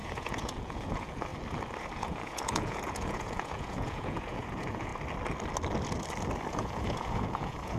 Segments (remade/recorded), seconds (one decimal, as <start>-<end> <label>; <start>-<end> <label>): 0.0-1.3 remade; 1.3-1.8 recorded; 1.8-4.9 remade; 4.9-6.5 recorded; 6.5-7.8 remade